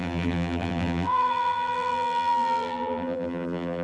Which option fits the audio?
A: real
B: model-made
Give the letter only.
B